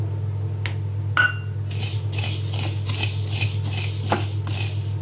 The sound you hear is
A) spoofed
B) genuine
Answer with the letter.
B